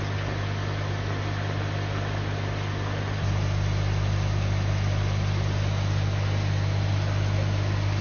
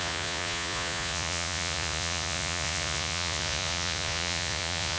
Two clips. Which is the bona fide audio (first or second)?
first